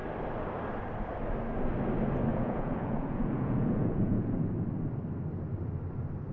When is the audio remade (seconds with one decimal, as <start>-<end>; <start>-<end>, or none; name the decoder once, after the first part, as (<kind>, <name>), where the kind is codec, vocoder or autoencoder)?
2.3-4.5 (vocoder, Vocos)